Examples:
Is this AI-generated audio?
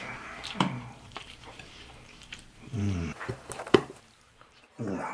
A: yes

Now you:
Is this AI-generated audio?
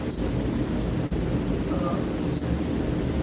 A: no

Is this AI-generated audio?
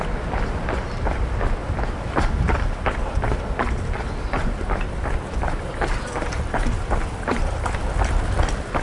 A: yes